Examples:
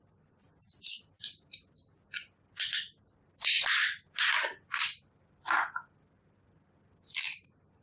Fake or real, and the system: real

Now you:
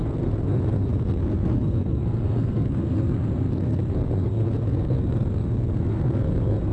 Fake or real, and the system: fake, codec, SNAC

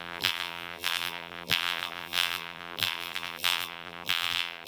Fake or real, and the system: fake, vocoder, BigVGAN v2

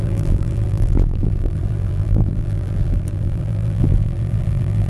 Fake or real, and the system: fake, vocoder, BigVGAN v2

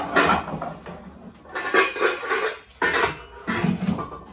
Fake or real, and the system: real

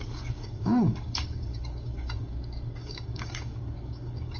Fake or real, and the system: fake, codec, DAC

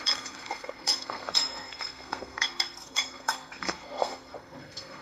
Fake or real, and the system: fake, codec, SNAC